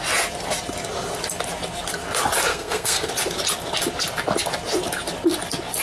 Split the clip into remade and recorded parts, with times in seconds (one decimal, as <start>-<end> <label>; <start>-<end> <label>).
0.0-2.5 recorded; 2.5-3.1 remade; 3.1-5.8 recorded